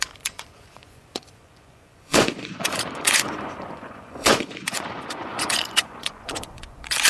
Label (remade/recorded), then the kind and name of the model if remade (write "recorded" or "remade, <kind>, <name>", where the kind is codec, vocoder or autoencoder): remade, vocoder, Vocos